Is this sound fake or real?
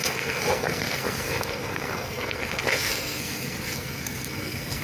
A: fake